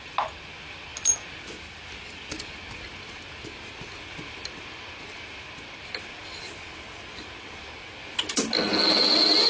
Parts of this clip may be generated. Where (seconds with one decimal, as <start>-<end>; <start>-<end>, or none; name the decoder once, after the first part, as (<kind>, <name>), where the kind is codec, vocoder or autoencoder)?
none